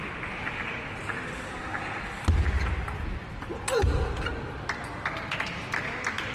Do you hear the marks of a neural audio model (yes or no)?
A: no